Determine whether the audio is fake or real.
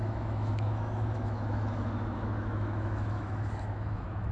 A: fake